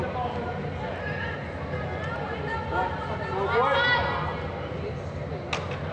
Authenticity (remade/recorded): recorded